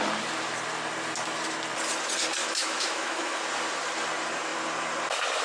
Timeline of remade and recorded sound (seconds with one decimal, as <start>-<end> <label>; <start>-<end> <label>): 0.0-2.4 recorded; 2.4-3.4 remade; 3.4-5.4 recorded